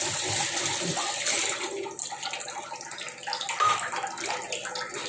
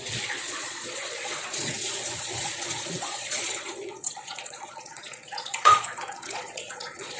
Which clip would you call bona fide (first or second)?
first